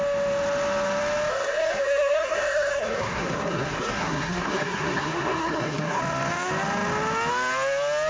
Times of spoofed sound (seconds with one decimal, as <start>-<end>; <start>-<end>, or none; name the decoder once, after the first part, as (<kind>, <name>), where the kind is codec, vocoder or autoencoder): 1.3-6.0 (codec, SNAC)